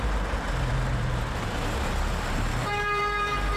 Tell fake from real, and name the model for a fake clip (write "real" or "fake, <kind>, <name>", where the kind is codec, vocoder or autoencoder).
fake, vocoder, BigVGAN v2